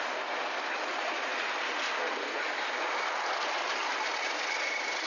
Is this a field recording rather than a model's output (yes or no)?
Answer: yes